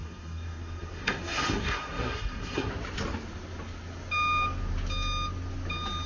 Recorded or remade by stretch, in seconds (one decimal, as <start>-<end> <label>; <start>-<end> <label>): 0.0-2.7 remade; 2.7-6.1 recorded